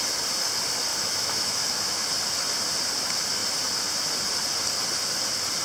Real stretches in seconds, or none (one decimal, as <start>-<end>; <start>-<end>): 0.0-0.9; 2.1-5.6